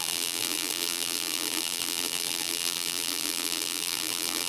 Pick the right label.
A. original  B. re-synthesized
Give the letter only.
B